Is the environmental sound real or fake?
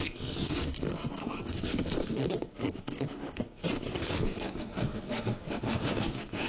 fake